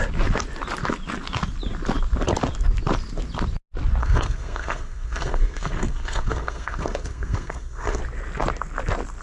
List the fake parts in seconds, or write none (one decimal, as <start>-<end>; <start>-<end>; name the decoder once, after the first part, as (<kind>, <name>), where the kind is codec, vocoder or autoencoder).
4.0-8.0 (codec, SNAC)